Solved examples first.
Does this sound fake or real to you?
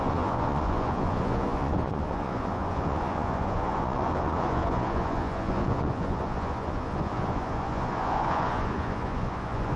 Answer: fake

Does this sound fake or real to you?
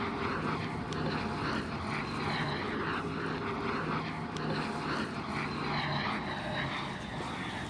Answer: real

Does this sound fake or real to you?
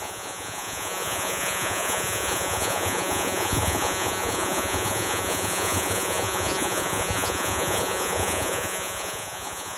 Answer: fake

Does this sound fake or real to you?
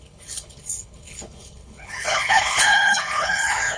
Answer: fake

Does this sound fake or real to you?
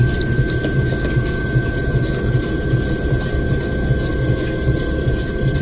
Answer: real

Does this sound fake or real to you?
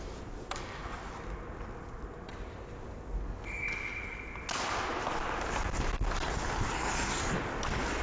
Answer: real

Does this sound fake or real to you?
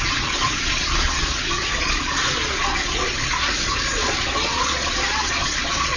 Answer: fake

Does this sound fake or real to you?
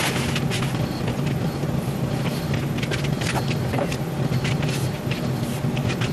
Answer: fake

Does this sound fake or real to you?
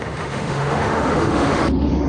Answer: fake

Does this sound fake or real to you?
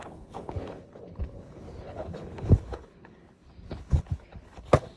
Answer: fake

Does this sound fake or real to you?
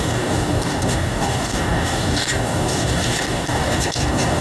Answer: fake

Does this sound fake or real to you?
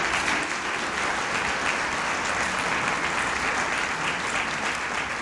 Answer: real